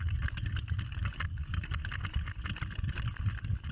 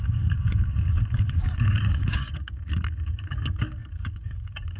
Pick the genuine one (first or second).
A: first